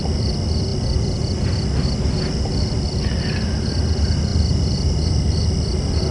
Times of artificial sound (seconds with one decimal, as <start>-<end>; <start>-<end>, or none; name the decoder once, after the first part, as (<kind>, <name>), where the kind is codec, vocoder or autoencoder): none